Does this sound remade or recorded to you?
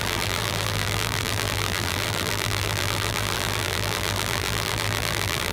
remade